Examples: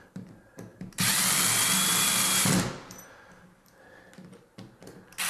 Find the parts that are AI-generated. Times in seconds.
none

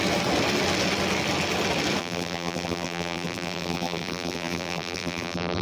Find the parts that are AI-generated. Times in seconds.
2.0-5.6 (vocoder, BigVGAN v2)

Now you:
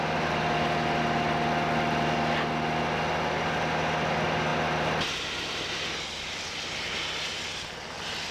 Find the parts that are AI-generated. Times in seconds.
none